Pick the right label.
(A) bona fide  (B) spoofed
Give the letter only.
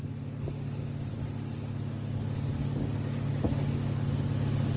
A